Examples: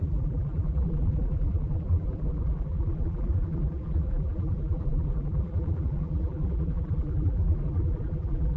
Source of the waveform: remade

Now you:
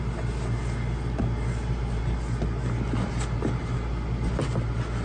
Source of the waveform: recorded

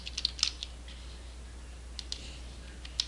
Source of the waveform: recorded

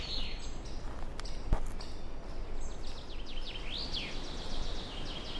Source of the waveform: recorded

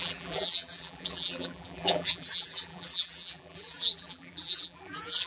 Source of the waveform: remade